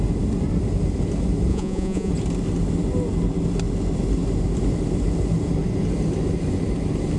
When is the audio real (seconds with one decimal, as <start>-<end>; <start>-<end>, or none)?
0.0-1.5; 2.1-7.2